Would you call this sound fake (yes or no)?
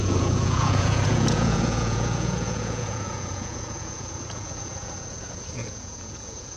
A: yes